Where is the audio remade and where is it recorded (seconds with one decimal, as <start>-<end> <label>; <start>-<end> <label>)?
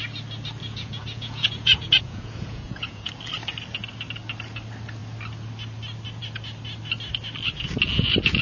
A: 0.0-0.6 recorded; 0.6-3.1 remade; 3.1-8.4 recorded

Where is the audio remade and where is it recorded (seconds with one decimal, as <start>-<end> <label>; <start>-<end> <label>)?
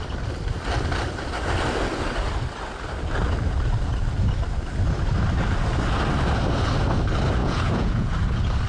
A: 0.0-7.4 recorded; 7.4-8.1 remade; 8.1-8.7 recorded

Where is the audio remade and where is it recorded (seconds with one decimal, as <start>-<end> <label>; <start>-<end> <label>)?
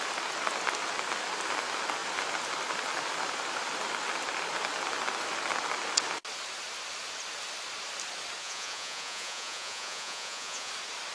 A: 0.0-8.4 recorded; 8.4-10.7 remade; 10.7-11.1 recorded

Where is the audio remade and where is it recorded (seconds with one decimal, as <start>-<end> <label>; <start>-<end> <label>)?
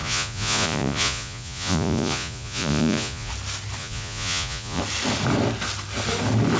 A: 0.0-3.3 remade; 3.3-3.8 recorded; 3.8-4.8 remade; 4.8-6.6 recorded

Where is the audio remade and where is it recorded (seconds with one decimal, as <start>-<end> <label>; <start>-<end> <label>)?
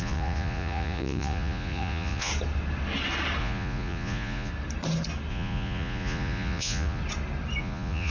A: 0.0-2.3 remade; 2.3-3.4 recorded; 3.4-4.5 remade; 4.5-5.3 recorded; 5.3-7.0 remade; 7.0-7.6 recorded; 7.6-8.1 remade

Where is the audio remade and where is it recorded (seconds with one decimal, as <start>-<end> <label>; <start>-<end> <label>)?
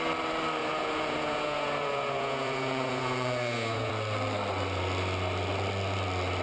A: 0.0-0.6 recorded; 0.6-3.9 remade; 3.9-6.4 recorded